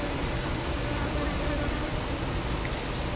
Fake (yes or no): no